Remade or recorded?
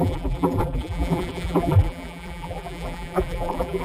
remade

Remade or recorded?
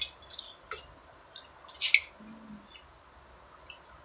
recorded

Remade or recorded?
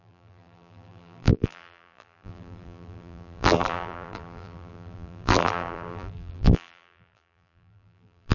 remade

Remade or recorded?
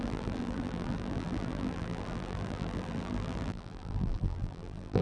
remade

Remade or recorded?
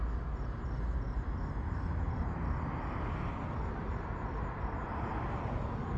recorded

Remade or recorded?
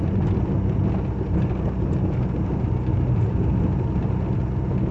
recorded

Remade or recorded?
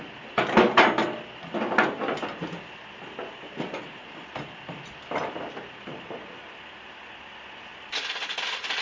recorded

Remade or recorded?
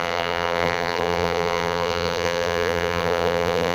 remade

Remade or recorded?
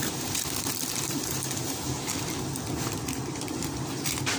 remade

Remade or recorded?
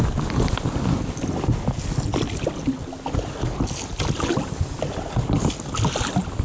recorded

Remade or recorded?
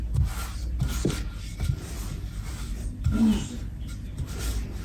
recorded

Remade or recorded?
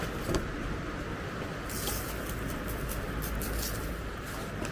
recorded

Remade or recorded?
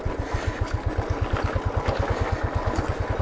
recorded